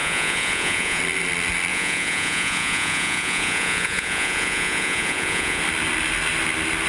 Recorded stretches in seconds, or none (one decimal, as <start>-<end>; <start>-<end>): 1.0-1.7; 5.6-6.9